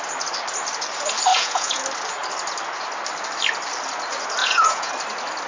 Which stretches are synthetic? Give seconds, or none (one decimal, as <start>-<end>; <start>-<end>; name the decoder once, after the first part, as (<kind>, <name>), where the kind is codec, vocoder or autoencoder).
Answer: 1.3-1.8 (vocoder, Vocos); 4.4-4.9